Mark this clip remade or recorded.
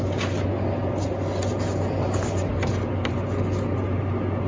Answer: recorded